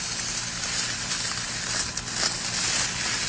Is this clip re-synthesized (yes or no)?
no